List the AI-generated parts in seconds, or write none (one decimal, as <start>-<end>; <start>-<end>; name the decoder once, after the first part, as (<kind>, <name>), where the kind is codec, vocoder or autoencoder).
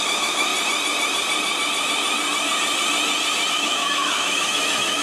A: 0.0-0.5 (autoencoder, DAC-VAE); 3.5-5.0